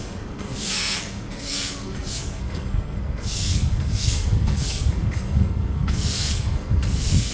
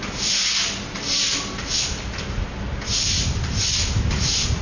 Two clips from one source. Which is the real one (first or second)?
second